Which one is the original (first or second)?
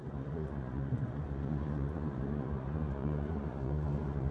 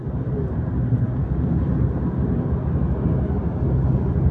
second